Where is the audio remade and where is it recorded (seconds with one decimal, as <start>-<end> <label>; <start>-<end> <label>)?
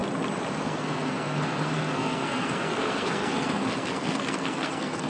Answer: 0.0-0.6 recorded; 0.6-5.1 remade